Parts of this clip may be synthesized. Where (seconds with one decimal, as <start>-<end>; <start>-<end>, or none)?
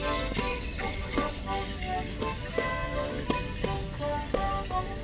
0.5-1.4